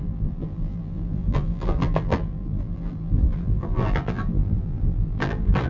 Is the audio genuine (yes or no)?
no